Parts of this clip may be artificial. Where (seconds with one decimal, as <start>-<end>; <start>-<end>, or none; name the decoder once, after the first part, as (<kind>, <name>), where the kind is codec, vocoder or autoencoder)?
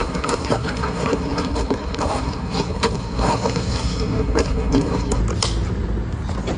0.0-5.2 (codec, SNAC)